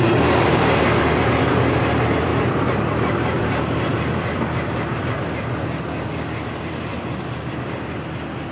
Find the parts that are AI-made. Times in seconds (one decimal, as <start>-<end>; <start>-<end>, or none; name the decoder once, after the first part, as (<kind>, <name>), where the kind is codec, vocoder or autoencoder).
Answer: 0.0-8.5 (vocoder, BigVGAN v2)